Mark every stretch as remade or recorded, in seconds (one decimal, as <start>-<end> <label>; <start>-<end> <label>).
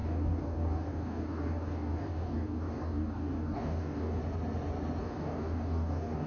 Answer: 0.0-4.2 remade; 4.2-5.0 recorded; 5.0-6.3 remade